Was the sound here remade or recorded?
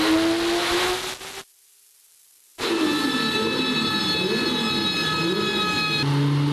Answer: recorded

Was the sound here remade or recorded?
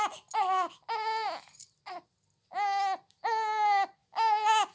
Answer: recorded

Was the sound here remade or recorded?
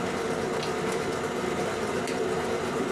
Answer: recorded